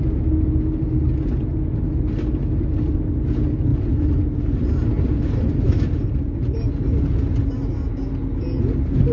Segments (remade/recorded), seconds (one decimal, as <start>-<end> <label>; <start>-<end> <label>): 0.0-9.1 recorded